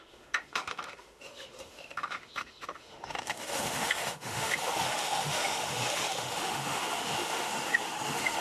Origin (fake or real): fake